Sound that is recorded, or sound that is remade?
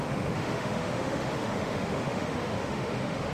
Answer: remade